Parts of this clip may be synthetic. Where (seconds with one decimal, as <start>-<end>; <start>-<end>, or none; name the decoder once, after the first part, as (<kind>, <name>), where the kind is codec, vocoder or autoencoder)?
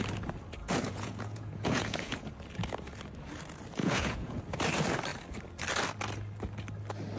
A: 0.6-2.3 (vocoder, Vocos); 3.8-4.4